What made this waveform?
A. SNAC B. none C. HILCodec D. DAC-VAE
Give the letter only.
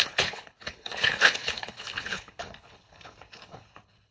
C